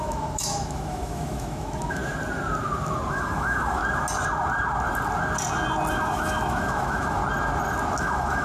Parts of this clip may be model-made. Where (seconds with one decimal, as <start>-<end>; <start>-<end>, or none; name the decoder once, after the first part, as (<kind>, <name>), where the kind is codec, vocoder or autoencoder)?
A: 0.0-2.0 (autoencoder, DAC-VAE); 3.1-3.8; 5.9-7.2; 8.0-8.4